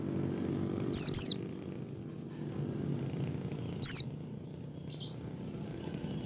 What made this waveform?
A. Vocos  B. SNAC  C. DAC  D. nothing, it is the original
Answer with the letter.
D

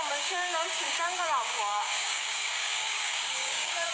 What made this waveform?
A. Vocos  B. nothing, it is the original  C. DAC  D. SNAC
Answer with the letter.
C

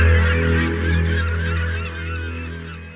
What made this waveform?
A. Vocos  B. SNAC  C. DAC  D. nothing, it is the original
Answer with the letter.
D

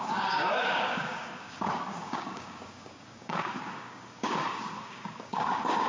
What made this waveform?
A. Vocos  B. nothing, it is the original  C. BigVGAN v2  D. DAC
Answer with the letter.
D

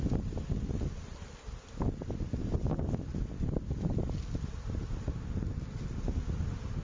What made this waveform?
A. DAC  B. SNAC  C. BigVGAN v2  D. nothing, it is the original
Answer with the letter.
D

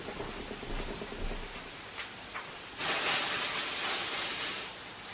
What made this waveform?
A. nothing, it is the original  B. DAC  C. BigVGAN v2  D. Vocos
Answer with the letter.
A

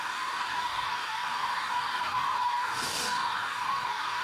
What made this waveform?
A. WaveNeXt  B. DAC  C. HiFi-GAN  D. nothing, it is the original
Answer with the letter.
B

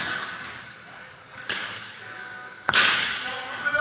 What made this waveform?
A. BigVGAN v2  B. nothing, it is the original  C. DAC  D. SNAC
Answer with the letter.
C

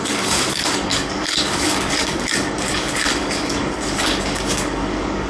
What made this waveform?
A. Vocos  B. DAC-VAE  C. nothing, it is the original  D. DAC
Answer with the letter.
D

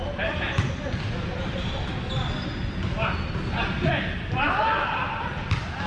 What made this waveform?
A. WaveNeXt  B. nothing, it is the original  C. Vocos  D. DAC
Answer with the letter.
B